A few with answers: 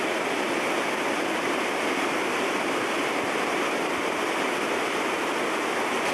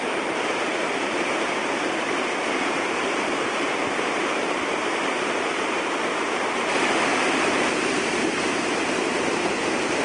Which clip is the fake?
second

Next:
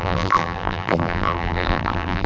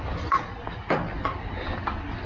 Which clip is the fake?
first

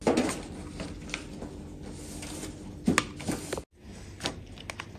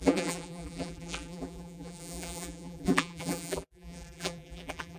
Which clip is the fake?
second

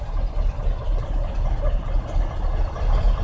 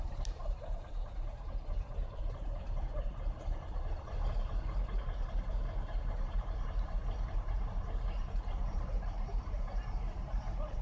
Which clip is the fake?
second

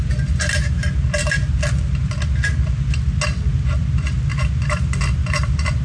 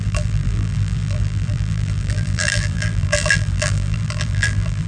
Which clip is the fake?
second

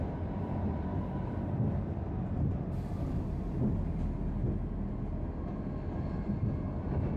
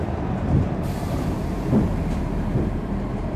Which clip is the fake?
second